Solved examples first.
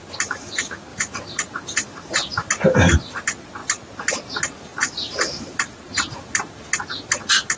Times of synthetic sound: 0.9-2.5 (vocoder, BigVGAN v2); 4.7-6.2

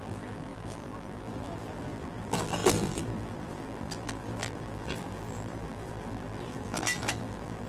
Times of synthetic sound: 0.0-7.7 (vocoder, BigVGAN v2)

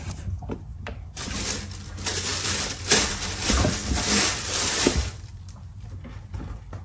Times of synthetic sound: 0.7-1.4 (vocoder, BigVGAN v2); 2.3-4.7

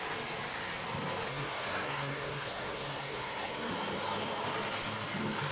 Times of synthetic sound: 1.3-3.7 (codec, SNAC)